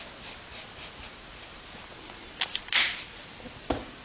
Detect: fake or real real